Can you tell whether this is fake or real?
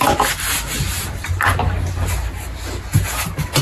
real